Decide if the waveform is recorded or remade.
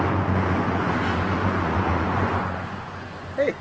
remade